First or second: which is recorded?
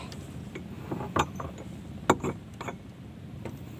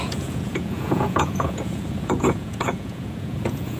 first